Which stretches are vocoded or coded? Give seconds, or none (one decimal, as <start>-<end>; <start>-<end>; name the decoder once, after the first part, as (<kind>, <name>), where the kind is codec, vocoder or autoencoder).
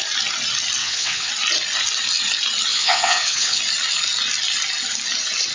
0.8-1.3 (vocoder, WaveNeXt); 2.7-3.6